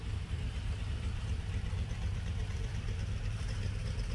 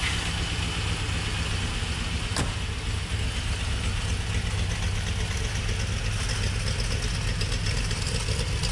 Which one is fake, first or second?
first